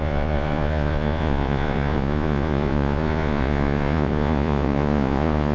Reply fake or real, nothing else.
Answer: fake